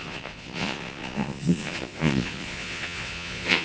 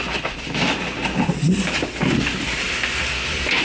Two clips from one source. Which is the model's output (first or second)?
first